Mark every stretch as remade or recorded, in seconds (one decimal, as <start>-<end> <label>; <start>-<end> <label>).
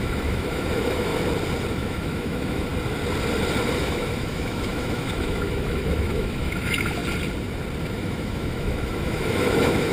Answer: 0.0-1.1 remade; 1.1-1.7 recorded; 1.7-2.7 remade; 2.7-3.8 recorded; 3.8-7.0 remade; 7.0-7.8 recorded; 7.8-9.9 remade